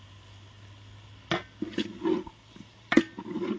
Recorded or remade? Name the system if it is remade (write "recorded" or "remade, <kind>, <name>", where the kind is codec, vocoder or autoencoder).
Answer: recorded